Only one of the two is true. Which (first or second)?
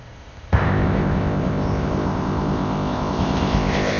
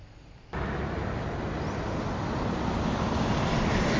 second